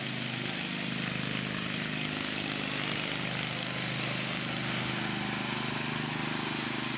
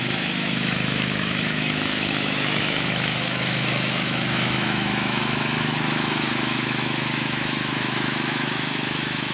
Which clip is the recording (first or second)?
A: first